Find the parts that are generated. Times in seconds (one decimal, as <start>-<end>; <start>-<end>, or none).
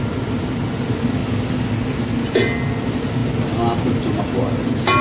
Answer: none